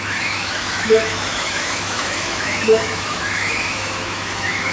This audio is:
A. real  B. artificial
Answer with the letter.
B